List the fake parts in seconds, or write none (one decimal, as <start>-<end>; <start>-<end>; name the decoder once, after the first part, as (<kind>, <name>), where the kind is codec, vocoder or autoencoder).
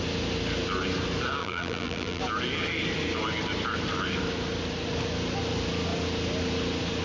1.4-2.2 (vocoder, BigVGAN v2)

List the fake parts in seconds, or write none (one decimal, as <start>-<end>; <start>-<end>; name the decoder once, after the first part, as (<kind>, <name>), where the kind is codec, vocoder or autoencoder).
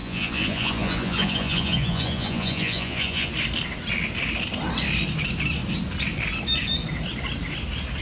0.0-3.3 (vocoder, Vocos)